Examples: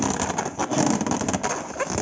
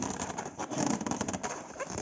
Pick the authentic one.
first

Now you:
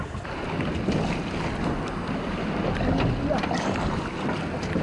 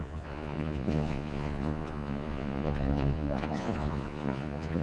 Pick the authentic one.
first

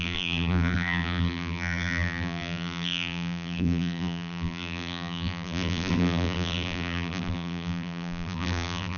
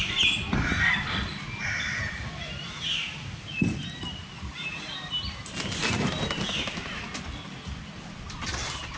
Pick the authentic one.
second